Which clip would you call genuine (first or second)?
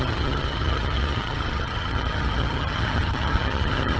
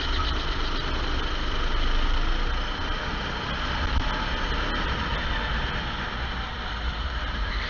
second